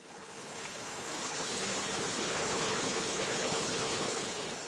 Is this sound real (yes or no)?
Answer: no